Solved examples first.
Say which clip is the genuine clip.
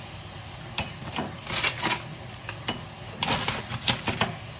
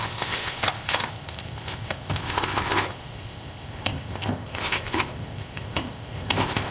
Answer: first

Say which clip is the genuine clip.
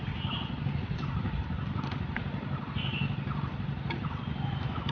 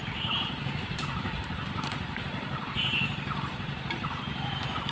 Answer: first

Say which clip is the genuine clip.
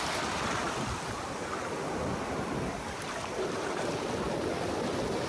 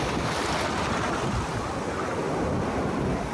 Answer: second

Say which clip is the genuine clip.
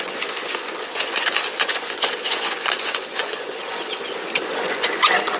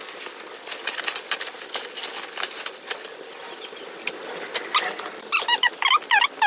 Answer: second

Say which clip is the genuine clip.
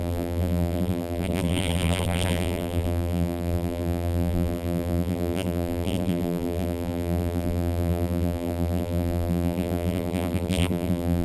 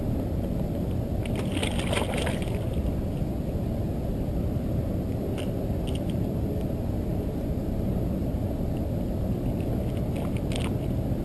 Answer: second